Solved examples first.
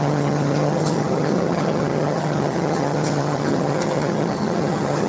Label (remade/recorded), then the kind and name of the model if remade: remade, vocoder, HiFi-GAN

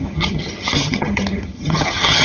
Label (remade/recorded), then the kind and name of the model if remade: remade, vocoder, HiFi-GAN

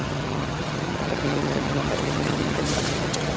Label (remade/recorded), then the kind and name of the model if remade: remade, vocoder, HiFi-GAN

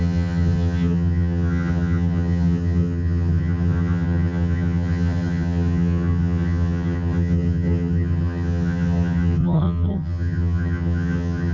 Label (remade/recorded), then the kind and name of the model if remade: remade, vocoder, HiFi-GAN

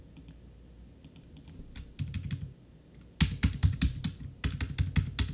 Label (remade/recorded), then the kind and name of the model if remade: recorded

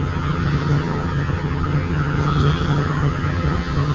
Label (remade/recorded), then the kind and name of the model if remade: remade, vocoder, HiFi-GAN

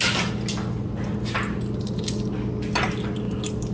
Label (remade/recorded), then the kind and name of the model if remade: recorded